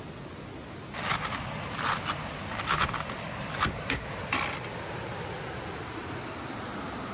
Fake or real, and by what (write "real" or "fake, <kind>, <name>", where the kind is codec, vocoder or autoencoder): real